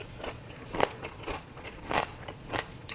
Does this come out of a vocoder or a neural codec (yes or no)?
yes